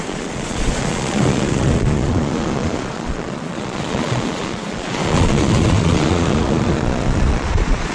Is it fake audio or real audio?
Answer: fake